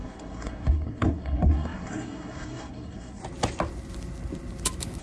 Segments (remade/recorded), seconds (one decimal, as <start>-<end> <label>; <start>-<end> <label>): 0.0-3.2 remade; 3.2-5.0 recorded